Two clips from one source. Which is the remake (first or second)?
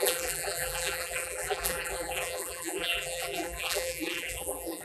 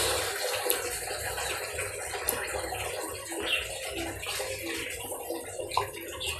first